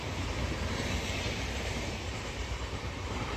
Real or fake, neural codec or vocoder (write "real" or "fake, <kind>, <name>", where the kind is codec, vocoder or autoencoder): fake, vocoder, BigVGAN v2